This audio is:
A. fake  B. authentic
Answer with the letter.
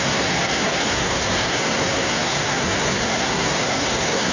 A